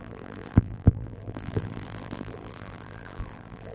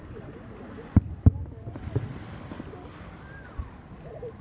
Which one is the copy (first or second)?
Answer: first